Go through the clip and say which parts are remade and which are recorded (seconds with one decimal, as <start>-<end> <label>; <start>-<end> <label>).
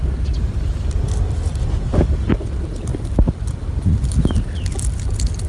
0.0-5.5 recorded